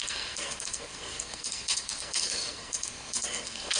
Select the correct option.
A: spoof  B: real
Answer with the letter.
A